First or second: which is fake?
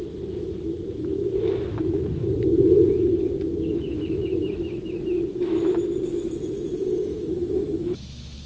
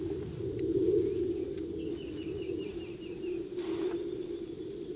first